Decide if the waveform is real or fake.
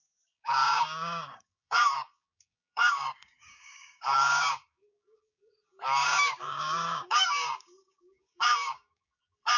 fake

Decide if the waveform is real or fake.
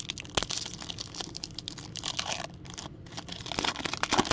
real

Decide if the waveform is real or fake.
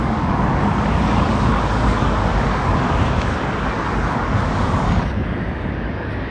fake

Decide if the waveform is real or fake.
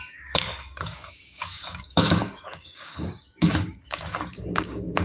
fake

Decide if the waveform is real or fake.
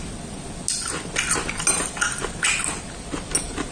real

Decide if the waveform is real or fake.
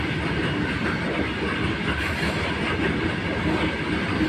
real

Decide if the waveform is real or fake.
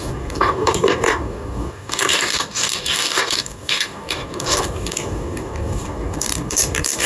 fake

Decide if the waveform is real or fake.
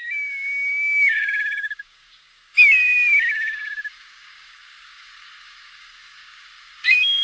fake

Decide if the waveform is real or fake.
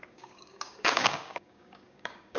fake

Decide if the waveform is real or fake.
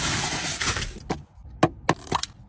real